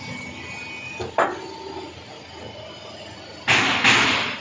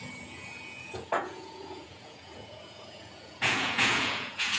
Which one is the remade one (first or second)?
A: second